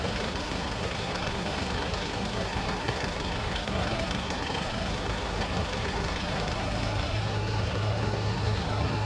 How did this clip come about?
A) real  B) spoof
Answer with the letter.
B